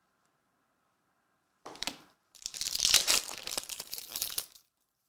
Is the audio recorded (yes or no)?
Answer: no